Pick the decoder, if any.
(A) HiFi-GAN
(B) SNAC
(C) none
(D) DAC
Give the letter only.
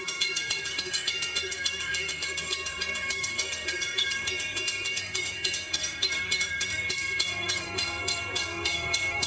B